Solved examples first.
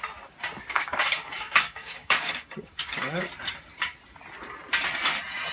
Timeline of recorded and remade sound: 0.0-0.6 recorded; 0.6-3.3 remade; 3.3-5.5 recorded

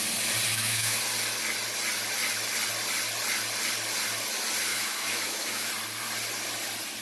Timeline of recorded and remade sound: 0.0-0.5 recorded; 0.5-1.0 remade; 1.0-4.7 recorded; 4.7-5.7 remade; 5.7-7.0 recorded

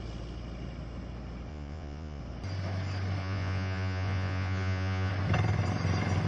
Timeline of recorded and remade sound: 0.0-1.5 recorded; 1.5-2.2 remade; 2.2-3.2 recorded; 3.2-5.1 remade; 5.1-6.3 recorded

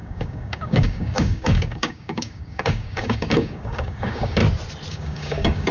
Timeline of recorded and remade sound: 0.0-4.4 remade; 4.4-4.9 recorded; 4.9-5.7 remade

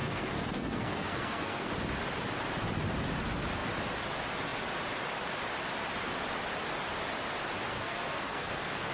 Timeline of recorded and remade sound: 0.0-1.7 remade; 1.7-7.7 recorded; 7.7-8.9 remade

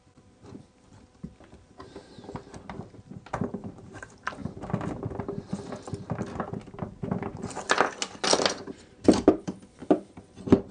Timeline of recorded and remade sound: 0.0-2.1 remade; 2.1-3.5 recorded; 3.5-4.4 remade; 4.4-8.5 recorded; 8.5-9.8 remade; 9.8-10.7 recorded

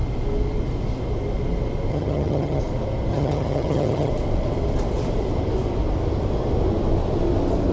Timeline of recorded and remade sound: 0.0-1.9 recorded; 1.9-2.6 remade; 2.6-3.1 recorded; 3.1-4.1 remade; 4.1-7.7 recorded

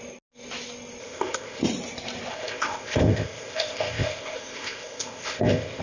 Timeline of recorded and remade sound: 0.0-1.0 recorded; 1.0-1.6 remade; 1.6-2.3 recorded; 2.3-5.8 remade